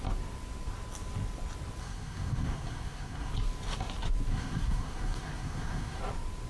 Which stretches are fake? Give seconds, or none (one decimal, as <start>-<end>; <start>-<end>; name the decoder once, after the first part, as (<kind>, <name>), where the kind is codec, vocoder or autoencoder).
1.8-3.3 (codec, SNAC); 4.3-6.0